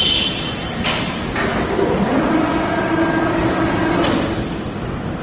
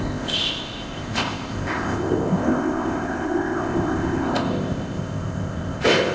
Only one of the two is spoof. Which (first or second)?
second